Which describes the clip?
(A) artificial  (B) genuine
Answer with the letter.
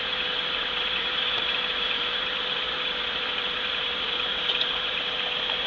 A